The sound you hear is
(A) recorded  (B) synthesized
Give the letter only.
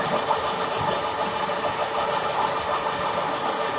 A